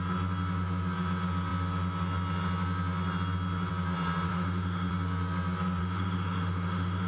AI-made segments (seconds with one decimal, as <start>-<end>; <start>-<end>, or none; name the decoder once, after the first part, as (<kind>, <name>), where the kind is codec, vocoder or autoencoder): 4.3-4.9 (autoencoder, DAC-VAE); 5.8-7.1